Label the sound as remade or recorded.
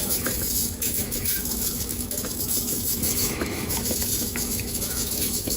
remade